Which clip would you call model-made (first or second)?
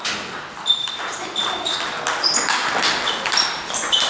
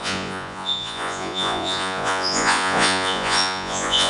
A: second